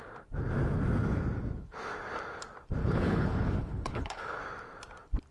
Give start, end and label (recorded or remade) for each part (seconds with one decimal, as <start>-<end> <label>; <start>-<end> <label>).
0.0-2.8 recorded; 2.8-4.4 remade; 4.4-5.3 recorded